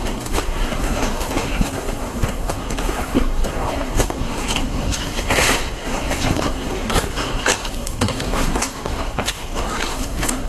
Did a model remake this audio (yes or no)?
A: yes